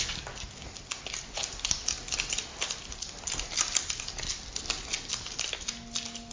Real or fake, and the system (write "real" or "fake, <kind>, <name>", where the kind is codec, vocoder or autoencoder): real